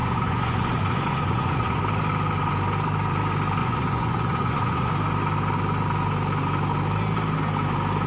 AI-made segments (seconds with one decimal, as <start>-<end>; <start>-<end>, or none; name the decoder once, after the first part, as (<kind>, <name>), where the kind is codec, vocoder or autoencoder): 0.0-1.8 (vocoder, Vocos); 3.6-4.9